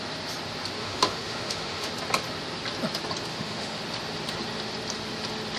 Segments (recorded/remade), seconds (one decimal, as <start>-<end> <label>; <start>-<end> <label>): 0.0-0.8 recorded; 0.8-1.9 remade; 1.9-3.3 recorded; 3.3-3.8 remade; 3.8-5.6 recorded